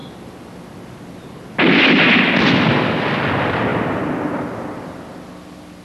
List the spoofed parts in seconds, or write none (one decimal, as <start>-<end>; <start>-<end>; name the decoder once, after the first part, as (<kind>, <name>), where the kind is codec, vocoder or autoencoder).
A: none